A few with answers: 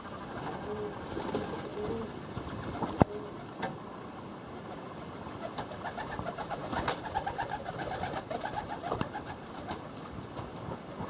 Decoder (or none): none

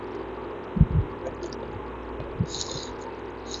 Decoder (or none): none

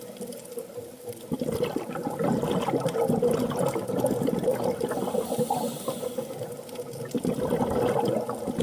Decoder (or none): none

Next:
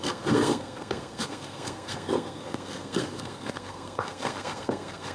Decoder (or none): codec, SNAC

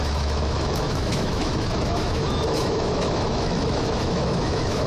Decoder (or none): autoencoder, DAC-VAE